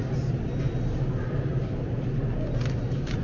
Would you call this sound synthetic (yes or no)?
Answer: no